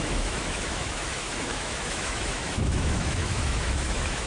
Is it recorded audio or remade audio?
remade